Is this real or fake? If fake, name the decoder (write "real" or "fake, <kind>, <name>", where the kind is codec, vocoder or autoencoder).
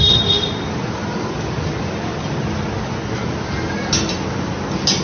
real